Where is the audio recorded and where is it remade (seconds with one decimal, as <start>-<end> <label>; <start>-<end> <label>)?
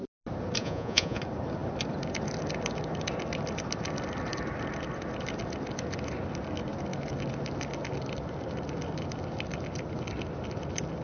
0.0-0.6 recorded; 0.6-1.2 remade; 1.2-11.0 recorded